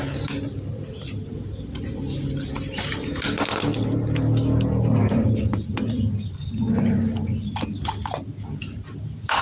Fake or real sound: real